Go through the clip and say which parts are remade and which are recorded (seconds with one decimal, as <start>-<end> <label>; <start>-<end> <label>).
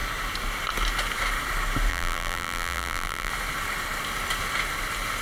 0.0-1.9 recorded; 1.9-3.3 remade; 3.3-5.2 recorded